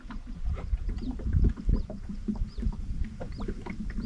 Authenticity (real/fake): fake